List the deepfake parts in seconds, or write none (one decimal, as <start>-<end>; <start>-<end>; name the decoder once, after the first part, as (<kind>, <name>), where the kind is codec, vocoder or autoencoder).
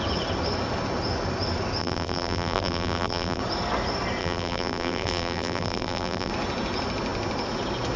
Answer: 1.8-3.4 (vocoder, BigVGAN v2); 4.2-6.3